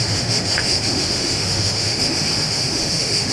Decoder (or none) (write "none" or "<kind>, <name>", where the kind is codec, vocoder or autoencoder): autoencoder, DAC-VAE